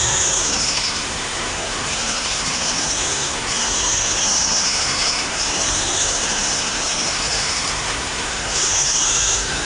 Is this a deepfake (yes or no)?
yes